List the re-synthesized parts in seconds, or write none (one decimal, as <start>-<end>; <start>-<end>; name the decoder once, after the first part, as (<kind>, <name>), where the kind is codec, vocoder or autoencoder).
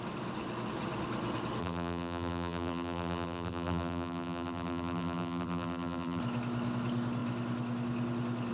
1.6-6.2 (vocoder, BigVGAN v2)